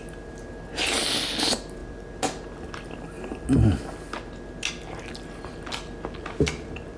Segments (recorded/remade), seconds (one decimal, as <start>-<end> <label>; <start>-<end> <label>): 0.0-7.0 recorded